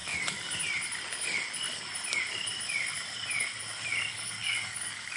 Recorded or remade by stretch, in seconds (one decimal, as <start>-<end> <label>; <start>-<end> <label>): 0.0-0.5 remade; 0.5-4.1 recorded; 4.1-5.2 remade